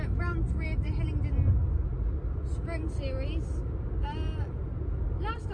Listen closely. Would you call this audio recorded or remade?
recorded